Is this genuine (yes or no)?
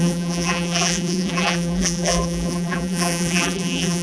no